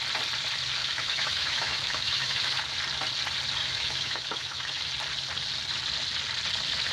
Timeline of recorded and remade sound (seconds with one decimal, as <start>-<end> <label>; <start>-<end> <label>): 0.0-0.8 recorded; 0.8-2.6 remade; 2.6-3.6 recorded; 3.6-4.9 remade; 4.9-6.9 recorded